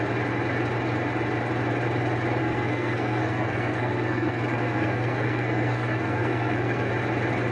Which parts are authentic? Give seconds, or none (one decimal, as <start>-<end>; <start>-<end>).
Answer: 0.0-2.4; 6.9-7.5